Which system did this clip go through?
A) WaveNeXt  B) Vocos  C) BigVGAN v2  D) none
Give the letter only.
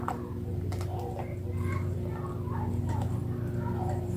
D